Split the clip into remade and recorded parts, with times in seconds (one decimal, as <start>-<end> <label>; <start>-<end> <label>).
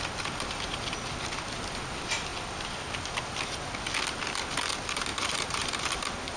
0.0-2.3 recorded; 2.3-3.1 remade; 3.1-5.1 recorded; 5.1-5.8 remade; 5.8-6.4 recorded